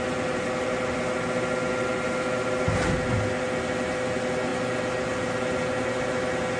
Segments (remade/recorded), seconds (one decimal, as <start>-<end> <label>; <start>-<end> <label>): 0.0-6.6 recorded